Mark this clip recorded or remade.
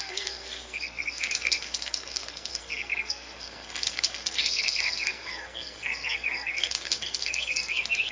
remade